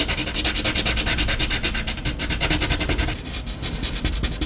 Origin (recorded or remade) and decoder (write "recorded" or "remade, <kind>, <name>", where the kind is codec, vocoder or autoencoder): recorded